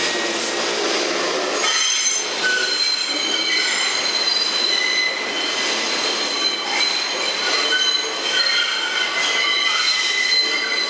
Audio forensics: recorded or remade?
recorded